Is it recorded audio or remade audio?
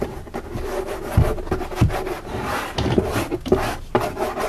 recorded